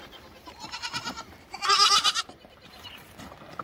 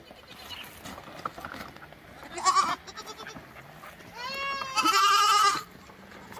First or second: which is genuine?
second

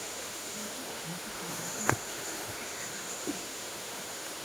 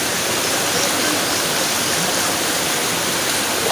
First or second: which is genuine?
second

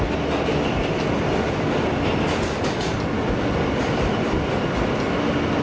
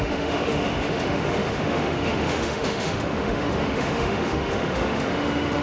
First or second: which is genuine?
first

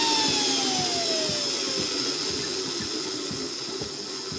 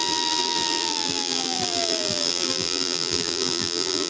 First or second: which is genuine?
first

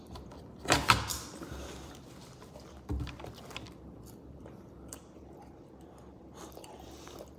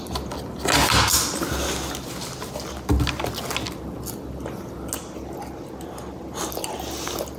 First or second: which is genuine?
second